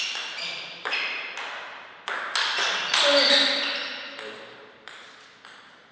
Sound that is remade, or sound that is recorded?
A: recorded